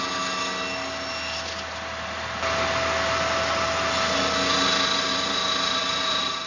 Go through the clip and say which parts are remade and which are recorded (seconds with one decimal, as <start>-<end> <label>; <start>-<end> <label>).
0.0-5.1 recorded; 5.1-6.5 remade